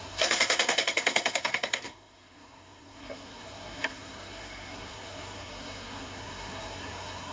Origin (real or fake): fake